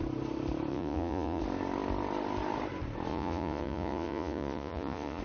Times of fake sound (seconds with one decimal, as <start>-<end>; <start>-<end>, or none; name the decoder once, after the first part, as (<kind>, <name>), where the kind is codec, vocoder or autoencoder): 0.7-1.4 (vocoder, Vocos); 3.1-5.2